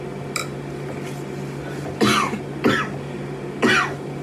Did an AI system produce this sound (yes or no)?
no